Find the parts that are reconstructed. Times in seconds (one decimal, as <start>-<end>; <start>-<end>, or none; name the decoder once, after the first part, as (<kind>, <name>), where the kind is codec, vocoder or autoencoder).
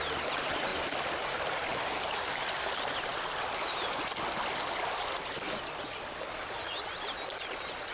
0.0-0.7 (vocoder, BigVGAN v2); 1.3-3.1; 7.3-7.9